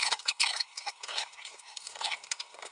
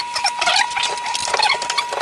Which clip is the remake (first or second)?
first